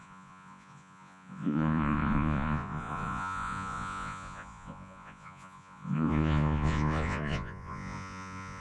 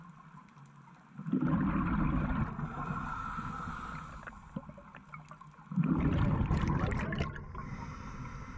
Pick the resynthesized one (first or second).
first